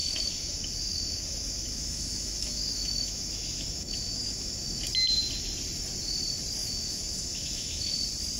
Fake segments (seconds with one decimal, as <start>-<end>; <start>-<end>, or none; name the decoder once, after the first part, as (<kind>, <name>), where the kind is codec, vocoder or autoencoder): 0.0-4.8 (autoencoder, DAC-VAE); 6.6-7.9

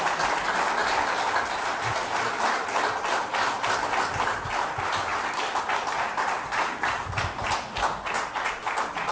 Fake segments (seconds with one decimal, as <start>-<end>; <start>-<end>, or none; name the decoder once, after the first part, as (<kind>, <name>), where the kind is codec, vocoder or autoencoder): none

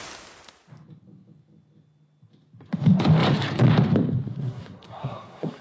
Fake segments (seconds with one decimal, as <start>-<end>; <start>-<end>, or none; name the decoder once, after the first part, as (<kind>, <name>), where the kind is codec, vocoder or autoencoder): 4.3-5.6 (codec, SNAC)

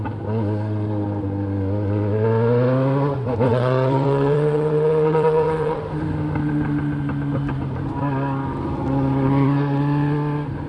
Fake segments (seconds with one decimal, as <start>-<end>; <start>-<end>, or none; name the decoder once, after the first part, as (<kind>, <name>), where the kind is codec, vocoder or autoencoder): 3.5-5.8 (vocoder, WaveNeXt)